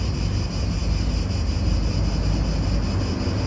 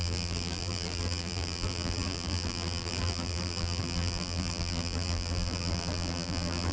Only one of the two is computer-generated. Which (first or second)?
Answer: second